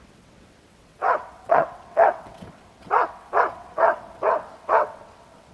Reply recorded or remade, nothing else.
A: remade